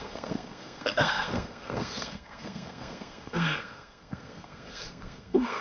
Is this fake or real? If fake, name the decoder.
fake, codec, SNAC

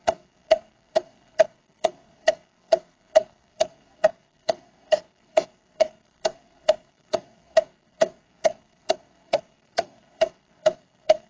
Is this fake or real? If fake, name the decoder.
fake, codec, SNAC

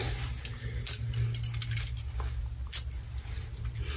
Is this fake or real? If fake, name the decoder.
real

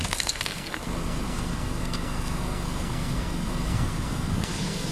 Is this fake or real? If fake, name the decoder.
fake, codec, SNAC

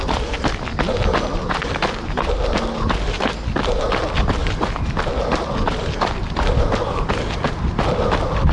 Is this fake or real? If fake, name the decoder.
real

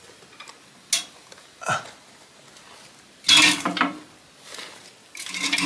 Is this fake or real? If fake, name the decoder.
real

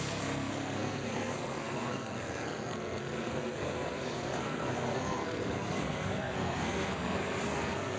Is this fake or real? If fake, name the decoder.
fake, codec, SNAC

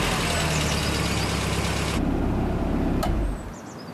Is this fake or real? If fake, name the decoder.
real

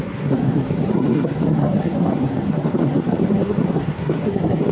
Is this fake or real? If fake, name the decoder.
fake, codec, SNAC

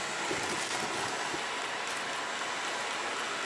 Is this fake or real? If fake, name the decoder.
real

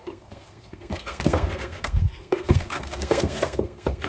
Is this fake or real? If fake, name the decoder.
fake, codec, SNAC